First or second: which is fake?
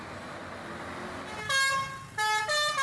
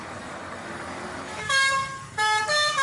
second